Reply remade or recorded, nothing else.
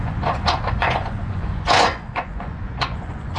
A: remade